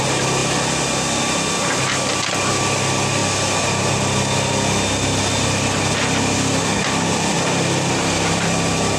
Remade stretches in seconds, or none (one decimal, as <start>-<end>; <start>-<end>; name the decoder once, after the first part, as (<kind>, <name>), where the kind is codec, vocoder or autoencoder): none